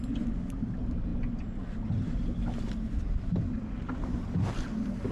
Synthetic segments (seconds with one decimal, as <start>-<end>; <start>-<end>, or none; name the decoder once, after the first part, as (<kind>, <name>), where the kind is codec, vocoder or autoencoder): none